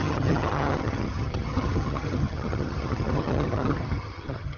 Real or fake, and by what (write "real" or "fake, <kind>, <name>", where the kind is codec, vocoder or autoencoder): fake, vocoder, HiFi-GAN